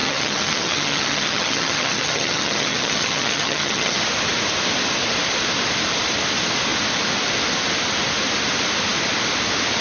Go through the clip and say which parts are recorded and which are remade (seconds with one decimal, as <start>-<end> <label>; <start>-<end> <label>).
0.0-4.0 remade; 4.0-9.8 recorded